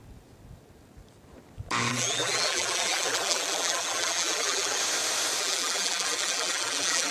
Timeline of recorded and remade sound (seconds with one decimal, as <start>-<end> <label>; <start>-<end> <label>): 0.0-1.9 recorded; 1.9-4.8 remade; 4.8-5.4 recorded; 5.4-7.1 remade